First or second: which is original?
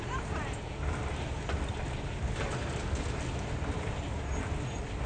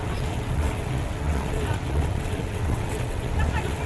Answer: first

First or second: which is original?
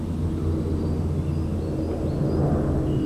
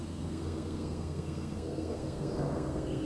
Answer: first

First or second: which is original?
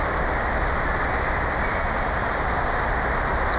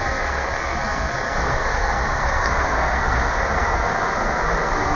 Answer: first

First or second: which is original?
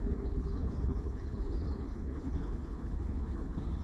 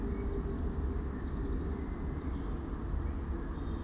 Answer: second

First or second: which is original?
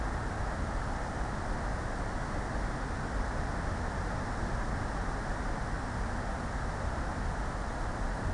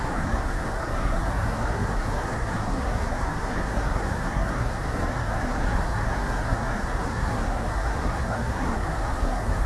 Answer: first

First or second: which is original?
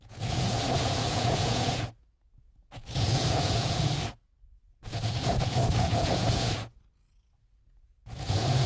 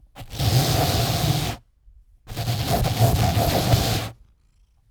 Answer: second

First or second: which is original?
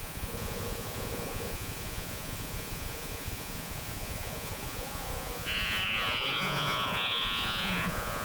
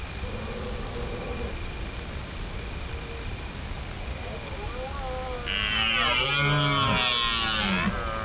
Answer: second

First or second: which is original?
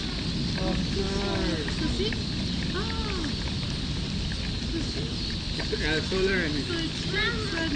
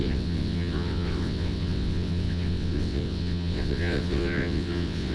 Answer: first